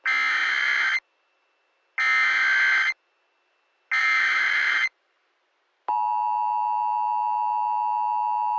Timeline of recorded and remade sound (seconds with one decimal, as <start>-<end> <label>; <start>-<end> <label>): 0.0-4.0 recorded; 4.0-5.4 remade; 5.4-8.6 recorded